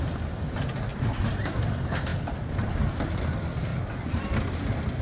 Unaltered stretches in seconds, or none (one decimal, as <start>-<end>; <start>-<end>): 0.0-0.9; 1.6-3.7; 4.4-5.0

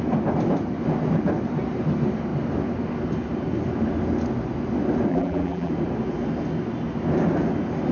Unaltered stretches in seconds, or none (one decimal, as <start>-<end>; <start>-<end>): 0.0-5.1; 5.7-7.9

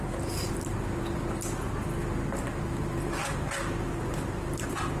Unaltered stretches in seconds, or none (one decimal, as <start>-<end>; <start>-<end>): 0.0-5.0

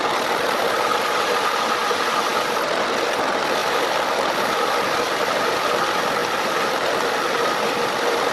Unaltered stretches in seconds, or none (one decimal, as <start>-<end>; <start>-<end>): 0.0-3.6; 5.5-6.2; 7.6-8.3

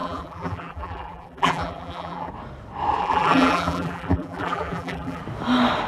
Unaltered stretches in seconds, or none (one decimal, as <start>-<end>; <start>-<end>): 2.3-3.0; 5.2-5.9

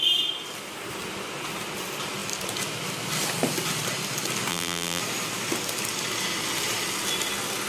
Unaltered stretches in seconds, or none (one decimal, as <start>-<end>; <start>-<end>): 0.0-4.5; 5.0-7.7

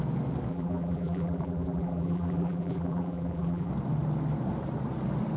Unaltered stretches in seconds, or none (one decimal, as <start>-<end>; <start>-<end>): 0.0-0.5; 3.7-5.4